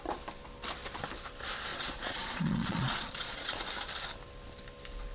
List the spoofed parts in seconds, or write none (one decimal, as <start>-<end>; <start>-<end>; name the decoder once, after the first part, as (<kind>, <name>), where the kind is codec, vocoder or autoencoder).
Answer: 1.7-3.6 (vocoder, Vocos)